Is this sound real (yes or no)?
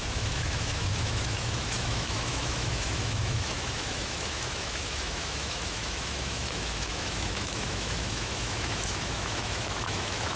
no